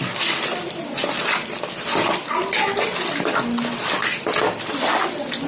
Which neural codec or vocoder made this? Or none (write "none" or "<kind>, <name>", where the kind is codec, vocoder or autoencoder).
none